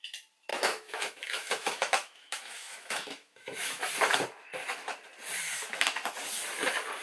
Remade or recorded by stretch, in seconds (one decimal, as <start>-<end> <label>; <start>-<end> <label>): 0.0-0.5 recorded; 0.5-3.8 remade; 3.8-7.0 recorded